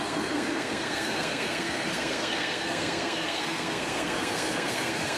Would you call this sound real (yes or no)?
no